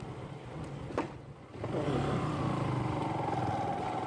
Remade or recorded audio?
recorded